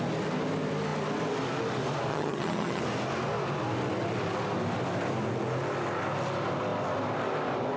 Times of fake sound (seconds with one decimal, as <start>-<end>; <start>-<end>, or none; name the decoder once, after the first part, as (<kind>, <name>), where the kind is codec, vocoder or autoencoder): 2.1-2.8 (vocoder, HiFi-GAN)

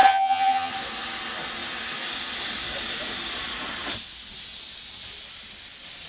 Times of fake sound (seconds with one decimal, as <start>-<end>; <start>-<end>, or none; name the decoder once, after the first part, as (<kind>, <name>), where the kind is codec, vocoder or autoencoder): 0.0-0.7 (vocoder, HiFi-GAN)

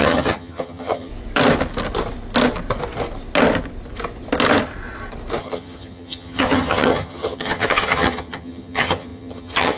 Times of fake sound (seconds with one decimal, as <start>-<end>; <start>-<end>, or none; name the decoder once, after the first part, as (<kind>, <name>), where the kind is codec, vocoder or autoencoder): 0.0-1.1 (vocoder, HiFi-GAN); 5.4-9.8

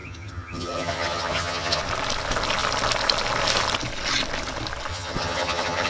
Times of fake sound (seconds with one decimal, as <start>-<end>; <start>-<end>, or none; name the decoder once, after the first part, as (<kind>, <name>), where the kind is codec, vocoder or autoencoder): 0.0-1.8 (vocoder, HiFi-GAN); 4.9-5.9

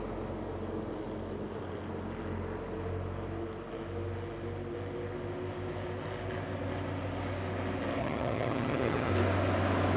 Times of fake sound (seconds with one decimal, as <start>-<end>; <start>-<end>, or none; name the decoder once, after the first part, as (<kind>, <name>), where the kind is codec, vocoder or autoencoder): 8.0-9.1 (vocoder, HiFi-GAN)

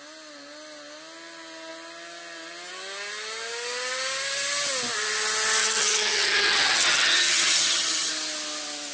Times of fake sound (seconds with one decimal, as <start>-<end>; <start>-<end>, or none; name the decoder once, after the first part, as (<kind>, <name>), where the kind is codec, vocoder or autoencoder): 5.6-8.1 (vocoder, HiFi-GAN)

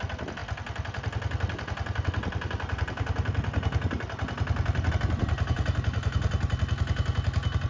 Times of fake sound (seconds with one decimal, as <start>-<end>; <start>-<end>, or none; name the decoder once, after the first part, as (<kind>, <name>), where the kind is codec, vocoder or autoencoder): none

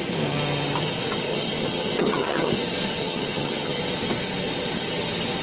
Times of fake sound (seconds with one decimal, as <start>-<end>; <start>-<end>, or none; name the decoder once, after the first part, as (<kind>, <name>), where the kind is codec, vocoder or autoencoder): 1.3-2.5 (vocoder, HiFi-GAN); 3.0-3.8